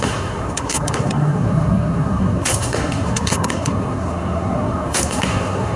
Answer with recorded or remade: remade